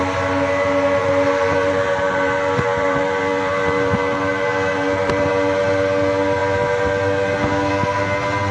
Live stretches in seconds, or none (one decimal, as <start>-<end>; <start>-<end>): 0.0-1.0; 5.3-8.5